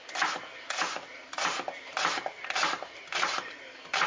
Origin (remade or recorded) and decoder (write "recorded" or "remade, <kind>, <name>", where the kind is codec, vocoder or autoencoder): remade, vocoder, BigVGAN v2